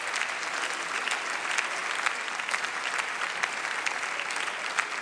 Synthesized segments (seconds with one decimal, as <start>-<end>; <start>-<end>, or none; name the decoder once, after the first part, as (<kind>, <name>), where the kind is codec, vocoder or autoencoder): none

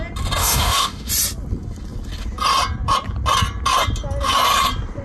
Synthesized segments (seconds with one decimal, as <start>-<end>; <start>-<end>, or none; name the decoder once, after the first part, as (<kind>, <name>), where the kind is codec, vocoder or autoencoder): 0.4-1.1 (autoencoder, DAC-VAE)

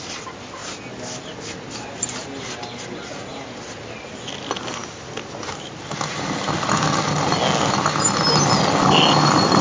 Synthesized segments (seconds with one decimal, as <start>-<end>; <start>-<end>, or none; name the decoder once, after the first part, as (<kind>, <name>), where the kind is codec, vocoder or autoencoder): none